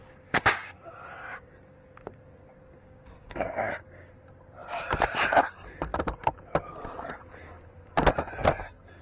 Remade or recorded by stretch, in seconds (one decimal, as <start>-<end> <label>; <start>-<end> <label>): 0.0-1.5 remade; 1.5-2.8 recorded; 2.8-4.1 remade; 4.1-9.0 recorded